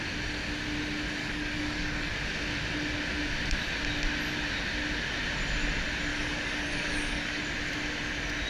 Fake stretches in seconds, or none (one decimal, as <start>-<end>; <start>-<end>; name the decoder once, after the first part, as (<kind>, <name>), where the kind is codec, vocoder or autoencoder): 1.2-2.1 (codec, DAC); 6.1-7.4